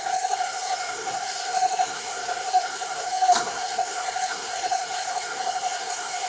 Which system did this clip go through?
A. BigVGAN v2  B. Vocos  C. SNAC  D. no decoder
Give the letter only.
C